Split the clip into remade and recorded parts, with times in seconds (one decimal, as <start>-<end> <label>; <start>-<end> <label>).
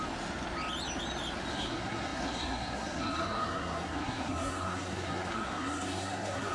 0.0-1.5 recorded; 1.5-6.5 remade